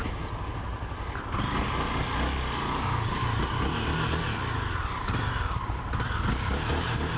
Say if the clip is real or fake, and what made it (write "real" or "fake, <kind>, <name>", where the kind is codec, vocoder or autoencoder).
real